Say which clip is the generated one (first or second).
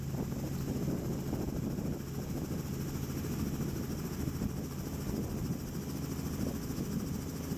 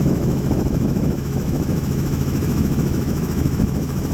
second